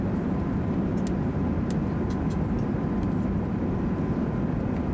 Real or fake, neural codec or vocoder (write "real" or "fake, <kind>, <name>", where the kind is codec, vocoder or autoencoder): real